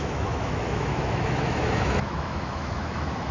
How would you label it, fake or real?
fake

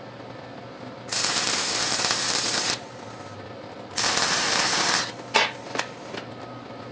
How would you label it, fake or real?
real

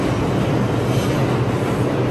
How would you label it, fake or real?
real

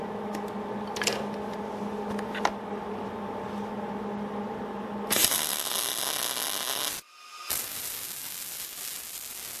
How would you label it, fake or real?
real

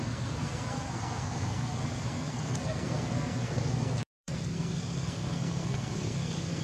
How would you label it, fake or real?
fake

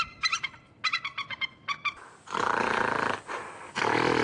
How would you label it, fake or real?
real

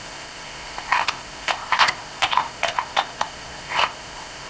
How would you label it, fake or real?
fake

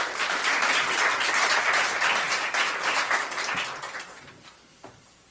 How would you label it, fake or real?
real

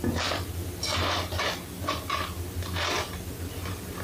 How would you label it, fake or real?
real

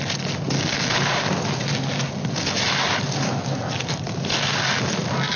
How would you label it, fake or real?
real